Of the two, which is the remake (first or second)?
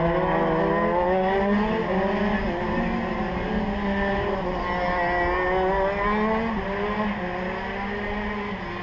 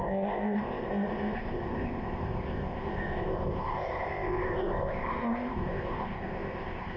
second